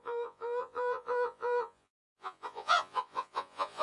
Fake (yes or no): yes